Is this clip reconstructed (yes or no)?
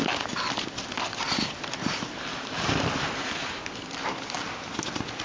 no